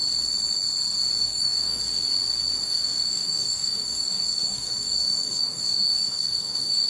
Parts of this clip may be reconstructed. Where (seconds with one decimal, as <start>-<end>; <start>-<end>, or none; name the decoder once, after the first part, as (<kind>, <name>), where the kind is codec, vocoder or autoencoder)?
1.2-1.8 (codec, DAC); 2.6-6.9

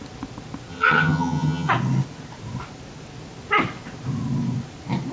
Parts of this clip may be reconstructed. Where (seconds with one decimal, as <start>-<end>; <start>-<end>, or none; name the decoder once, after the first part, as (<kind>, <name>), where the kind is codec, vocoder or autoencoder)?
0.7-1.7 (vocoder, HiFi-GAN)

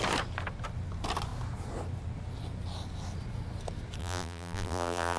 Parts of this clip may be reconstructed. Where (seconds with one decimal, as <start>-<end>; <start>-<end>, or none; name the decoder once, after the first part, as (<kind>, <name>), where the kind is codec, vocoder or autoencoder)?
4.0-5.2 (vocoder, BigVGAN v2)

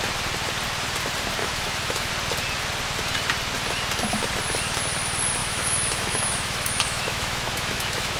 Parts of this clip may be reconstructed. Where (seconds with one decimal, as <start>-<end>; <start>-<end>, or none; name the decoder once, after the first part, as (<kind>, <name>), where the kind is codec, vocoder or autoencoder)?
1.4-2.1 (autoencoder, DAC-VAE); 5.4-8.2